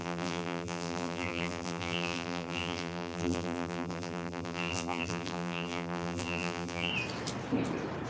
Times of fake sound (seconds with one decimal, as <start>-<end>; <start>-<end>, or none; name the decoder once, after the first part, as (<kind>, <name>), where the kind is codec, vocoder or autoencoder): 0.0-6.9 (vocoder, BigVGAN v2)